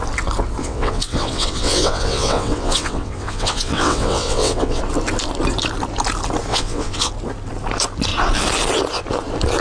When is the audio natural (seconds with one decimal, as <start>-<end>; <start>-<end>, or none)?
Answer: 0.0-0.6; 4.8-6.5; 7.1-9.6